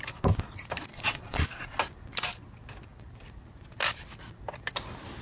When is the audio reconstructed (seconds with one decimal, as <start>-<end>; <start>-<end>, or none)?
0.9-1.8